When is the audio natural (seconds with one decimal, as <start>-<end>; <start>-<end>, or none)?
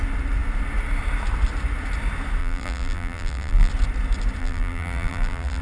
0.0-2.4; 3.7-4.4